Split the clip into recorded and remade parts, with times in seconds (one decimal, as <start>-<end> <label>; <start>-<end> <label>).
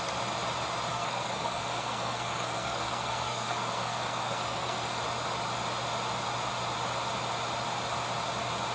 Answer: 0.0-0.9 recorded; 0.9-5.0 remade; 5.0-8.7 recorded